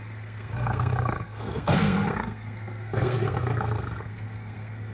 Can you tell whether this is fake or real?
fake